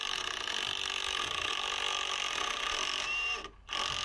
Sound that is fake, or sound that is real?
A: real